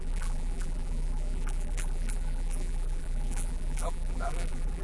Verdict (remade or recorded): remade